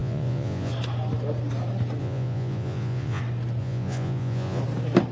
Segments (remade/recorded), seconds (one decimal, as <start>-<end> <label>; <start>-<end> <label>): 0.0-0.7 remade; 0.7-2.0 recorded; 2.0-3.2 remade; 3.2-3.6 recorded; 3.6-4.6 remade; 4.6-5.1 recorded

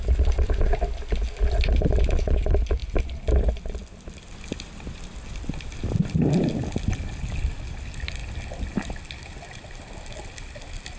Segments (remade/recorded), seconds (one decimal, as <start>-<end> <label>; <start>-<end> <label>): 0.0-11.0 recorded

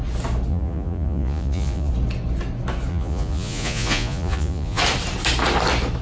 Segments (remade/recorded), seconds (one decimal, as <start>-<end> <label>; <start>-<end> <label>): 0.0-0.5 recorded; 0.5-1.9 remade; 1.9-2.9 recorded; 2.9-4.8 remade; 4.8-6.0 recorded

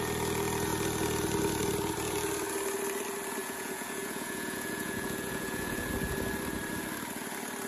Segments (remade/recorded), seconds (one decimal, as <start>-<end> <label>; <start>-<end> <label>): 0.0-3.4 recorded; 3.4-5.9 remade; 5.9-7.7 recorded

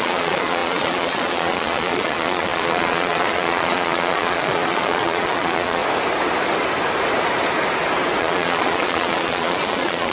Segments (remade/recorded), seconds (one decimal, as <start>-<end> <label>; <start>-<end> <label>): 0.0-5.8 remade; 5.8-8.2 recorded; 8.2-10.1 remade